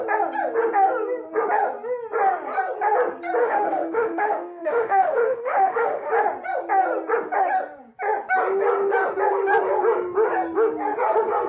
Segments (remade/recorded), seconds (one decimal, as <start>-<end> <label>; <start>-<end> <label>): 0.0-3.4 recorded; 3.4-6.1 remade; 6.1-11.5 recorded